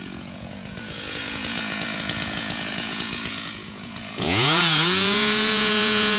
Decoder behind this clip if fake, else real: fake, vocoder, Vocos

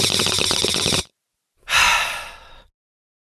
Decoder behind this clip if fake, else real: real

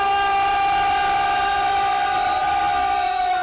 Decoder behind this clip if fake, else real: real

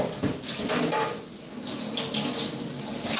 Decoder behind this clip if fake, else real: real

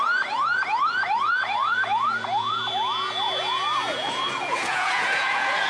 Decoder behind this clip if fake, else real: fake, vocoder, Vocos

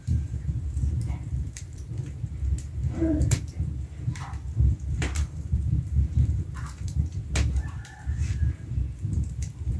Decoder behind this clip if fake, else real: fake, vocoder, BigVGAN v2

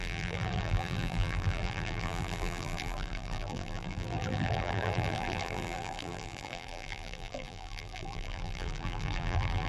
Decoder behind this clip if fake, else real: fake, vocoder, BigVGAN v2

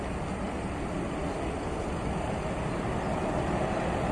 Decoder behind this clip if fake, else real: real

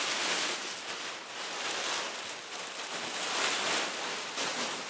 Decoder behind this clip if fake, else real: real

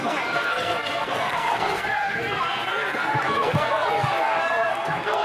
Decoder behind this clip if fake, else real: fake, codec, SNAC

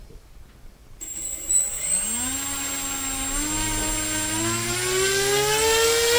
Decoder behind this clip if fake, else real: real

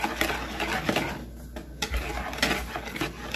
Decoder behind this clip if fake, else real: real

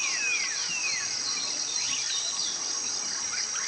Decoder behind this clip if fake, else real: real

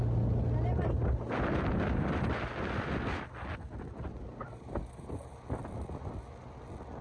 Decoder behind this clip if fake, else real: real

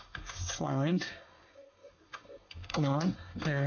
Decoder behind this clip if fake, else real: fake, codec, SNAC